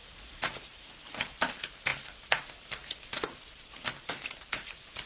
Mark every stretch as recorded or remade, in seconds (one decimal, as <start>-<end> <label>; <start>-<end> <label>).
0.0-0.9 remade; 0.9-5.1 recorded